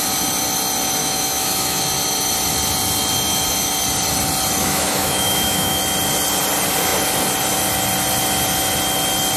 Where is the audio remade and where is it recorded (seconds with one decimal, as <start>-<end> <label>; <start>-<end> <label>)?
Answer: 0.0-1.0 recorded; 1.0-1.8 remade; 1.8-4.6 recorded; 4.6-5.8 remade; 5.8-9.4 recorded

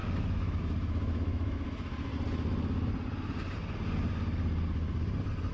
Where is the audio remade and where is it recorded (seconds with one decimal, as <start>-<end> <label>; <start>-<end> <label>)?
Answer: 0.0-2.1 remade; 2.1-5.5 recorded

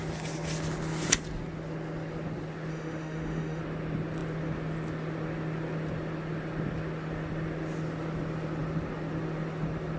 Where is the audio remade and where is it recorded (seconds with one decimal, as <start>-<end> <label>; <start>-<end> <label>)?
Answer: 0.0-2.7 recorded; 2.7-3.6 remade; 3.6-10.0 recorded

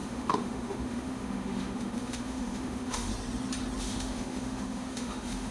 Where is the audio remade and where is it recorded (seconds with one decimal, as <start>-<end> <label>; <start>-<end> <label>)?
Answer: 0.0-3.1 remade; 3.1-3.8 recorded; 3.8-5.5 remade

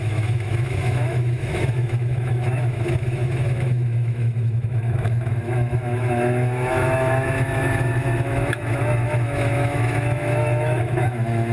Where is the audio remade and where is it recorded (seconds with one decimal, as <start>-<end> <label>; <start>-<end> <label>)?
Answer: 0.0-11.5 remade

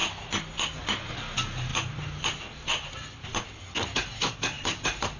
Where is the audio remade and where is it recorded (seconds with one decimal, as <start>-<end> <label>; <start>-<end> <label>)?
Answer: 0.0-5.2 recorded